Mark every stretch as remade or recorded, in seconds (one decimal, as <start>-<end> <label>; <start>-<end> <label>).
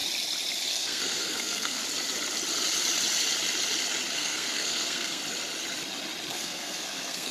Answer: 0.0-0.7 recorded; 0.7-1.8 remade; 1.8-4.1 recorded; 4.1-5.2 remade; 5.2-6.3 recorded; 6.3-7.3 remade